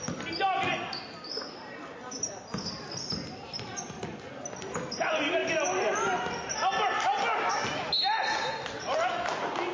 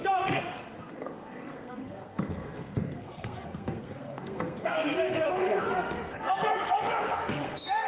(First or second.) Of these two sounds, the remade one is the second